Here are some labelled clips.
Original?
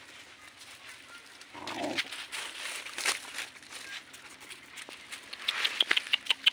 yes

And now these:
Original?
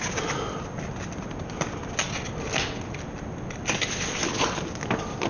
yes